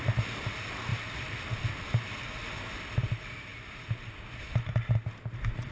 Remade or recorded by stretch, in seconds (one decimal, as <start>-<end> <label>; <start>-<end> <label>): 0.0-5.7 recorded